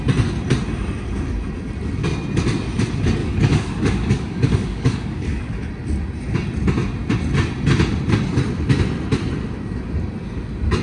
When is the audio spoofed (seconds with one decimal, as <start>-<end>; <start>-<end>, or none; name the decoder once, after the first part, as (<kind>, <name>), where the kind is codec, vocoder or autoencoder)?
3.2-5.7 (codec, DAC)